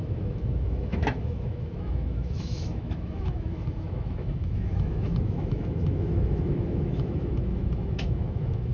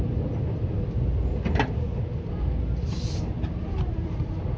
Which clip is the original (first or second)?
second